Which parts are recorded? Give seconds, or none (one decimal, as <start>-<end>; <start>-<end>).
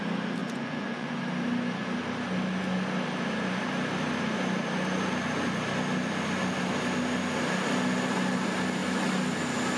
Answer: 0.0-0.4; 1.2-9.8